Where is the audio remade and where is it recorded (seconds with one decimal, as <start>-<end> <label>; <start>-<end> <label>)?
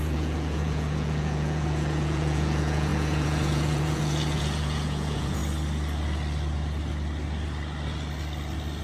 0.0-5.4 remade; 5.4-8.8 recorded